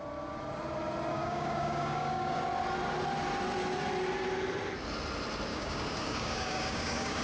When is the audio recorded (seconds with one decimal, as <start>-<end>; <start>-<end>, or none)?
0.0-1.1; 2.4-5.5